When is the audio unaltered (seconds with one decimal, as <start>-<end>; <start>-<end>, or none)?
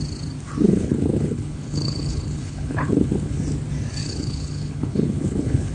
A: 0.0-0.7; 3.4-4.0